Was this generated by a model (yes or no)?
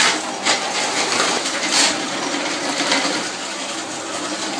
yes